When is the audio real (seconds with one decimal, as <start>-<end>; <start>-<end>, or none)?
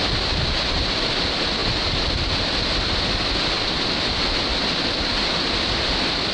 0.0-6.3